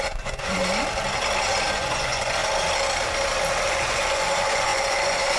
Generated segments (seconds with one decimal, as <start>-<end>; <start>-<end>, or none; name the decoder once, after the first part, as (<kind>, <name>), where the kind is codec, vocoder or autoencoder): 0.0-0.6 (vocoder, Vocos); 1.6-2.4; 3.7-5.4